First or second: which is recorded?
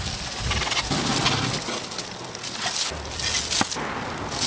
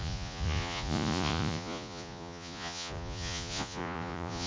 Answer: first